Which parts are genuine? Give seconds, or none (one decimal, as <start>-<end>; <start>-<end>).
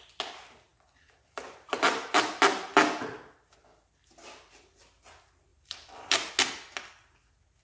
0.0-0.7; 2.3-5.5; 6.3-7.6